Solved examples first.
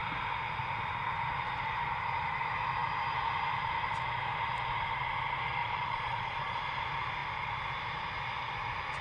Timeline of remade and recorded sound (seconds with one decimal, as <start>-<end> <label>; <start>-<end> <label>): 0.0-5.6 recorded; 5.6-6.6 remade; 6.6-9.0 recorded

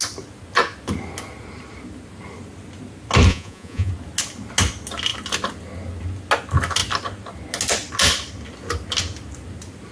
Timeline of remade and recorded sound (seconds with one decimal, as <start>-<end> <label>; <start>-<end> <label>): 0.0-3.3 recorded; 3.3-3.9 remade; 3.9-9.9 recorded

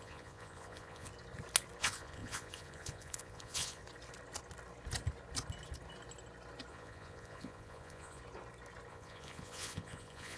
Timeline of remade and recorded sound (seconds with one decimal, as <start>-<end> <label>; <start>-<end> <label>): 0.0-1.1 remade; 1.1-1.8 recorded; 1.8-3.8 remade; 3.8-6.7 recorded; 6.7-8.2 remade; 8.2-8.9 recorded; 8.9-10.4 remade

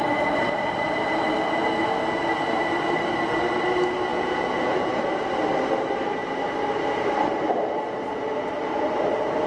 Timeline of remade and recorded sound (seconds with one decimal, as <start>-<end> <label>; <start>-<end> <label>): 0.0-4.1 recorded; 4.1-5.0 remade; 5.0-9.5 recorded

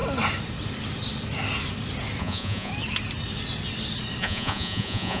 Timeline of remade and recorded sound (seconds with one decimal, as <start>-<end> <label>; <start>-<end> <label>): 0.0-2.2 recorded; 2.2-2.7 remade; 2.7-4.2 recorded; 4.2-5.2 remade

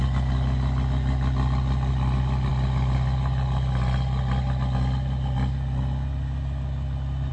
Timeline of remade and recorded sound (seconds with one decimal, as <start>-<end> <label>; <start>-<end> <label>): 0.0-7.3 recorded

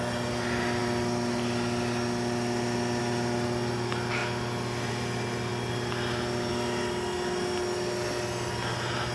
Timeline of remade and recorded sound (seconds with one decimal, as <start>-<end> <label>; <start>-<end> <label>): 0.0-9.1 recorded